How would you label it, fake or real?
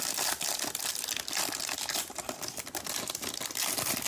real